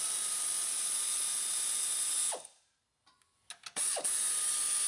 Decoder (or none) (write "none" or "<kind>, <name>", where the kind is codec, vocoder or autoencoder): none